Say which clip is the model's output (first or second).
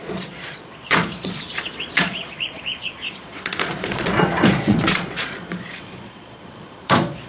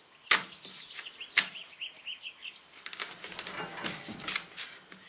first